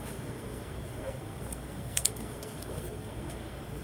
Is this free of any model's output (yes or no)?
no